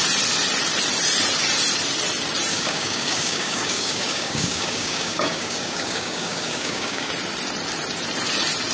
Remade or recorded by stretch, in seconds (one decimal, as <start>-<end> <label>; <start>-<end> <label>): 0.0-2.5 recorded; 2.5-7.1 remade; 7.1-8.7 recorded

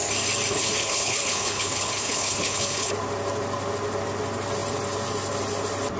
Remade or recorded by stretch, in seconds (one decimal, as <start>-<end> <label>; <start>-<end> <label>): 0.0-0.5 recorded; 0.5-2.9 remade; 2.9-6.0 recorded

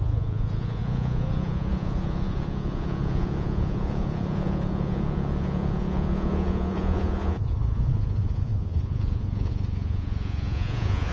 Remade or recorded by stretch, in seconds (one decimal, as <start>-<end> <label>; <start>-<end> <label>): 0.0-11.1 remade

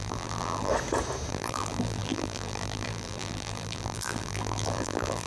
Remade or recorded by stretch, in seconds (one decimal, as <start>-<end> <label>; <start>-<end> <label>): 0.0-0.7 remade; 0.7-1.3 recorded; 1.3-5.3 remade